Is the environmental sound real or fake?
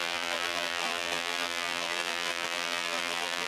fake